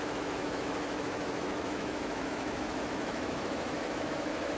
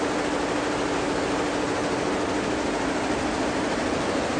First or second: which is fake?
first